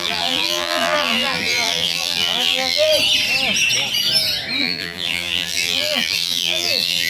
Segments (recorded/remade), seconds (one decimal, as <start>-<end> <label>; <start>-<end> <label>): 0.0-2.9 remade; 2.9-4.6 recorded; 4.6-7.1 remade